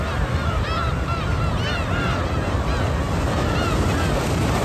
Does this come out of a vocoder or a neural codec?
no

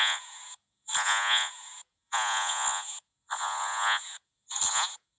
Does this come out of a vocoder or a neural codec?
yes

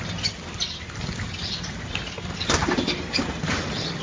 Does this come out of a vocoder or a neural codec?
no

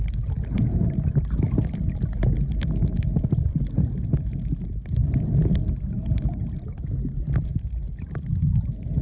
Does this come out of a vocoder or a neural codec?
no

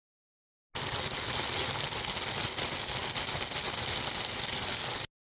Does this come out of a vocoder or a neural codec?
no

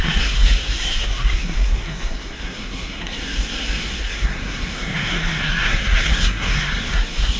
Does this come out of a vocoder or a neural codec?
yes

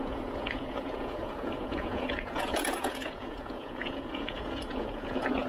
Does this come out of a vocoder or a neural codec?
yes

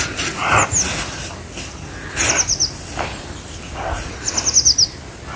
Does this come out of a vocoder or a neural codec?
no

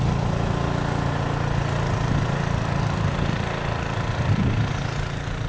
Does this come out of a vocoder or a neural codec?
no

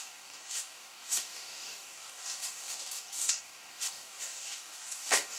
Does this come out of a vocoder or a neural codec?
yes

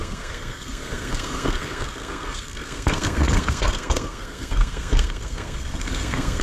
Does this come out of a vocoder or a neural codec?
yes